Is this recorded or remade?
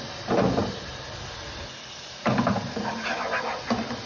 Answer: recorded